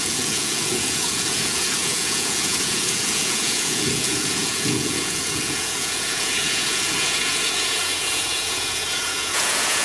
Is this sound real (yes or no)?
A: no